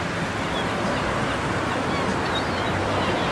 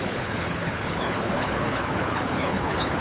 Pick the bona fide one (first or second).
first